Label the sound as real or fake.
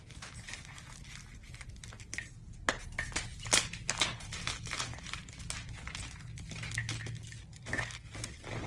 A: real